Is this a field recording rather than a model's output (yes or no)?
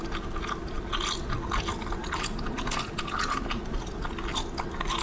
yes